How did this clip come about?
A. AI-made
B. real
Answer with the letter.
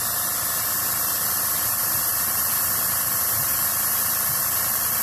B